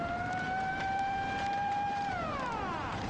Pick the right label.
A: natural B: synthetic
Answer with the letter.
B